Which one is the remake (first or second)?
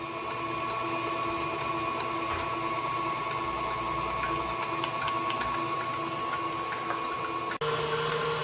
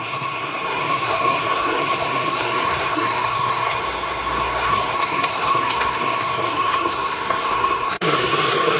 second